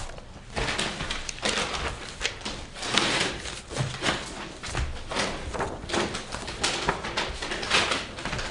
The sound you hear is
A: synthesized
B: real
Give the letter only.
B